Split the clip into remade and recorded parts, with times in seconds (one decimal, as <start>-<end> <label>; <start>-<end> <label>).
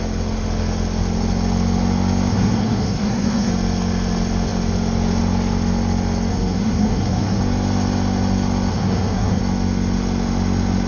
0.0-2.3 recorded; 2.3-3.5 remade; 3.5-6.3 recorded; 6.3-7.4 remade; 7.4-8.7 recorded; 8.7-9.4 remade; 9.4-10.9 recorded